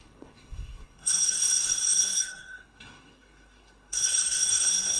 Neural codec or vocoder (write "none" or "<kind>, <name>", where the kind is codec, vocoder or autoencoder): codec, SNAC